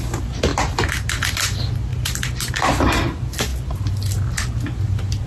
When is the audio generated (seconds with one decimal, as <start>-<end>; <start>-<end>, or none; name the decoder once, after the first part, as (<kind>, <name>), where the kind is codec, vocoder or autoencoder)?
none